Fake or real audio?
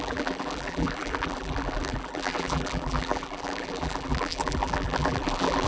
fake